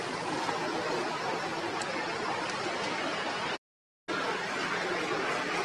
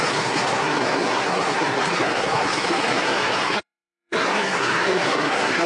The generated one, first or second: second